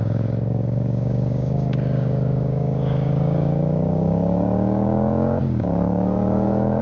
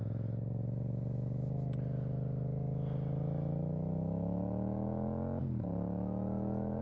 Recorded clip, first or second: second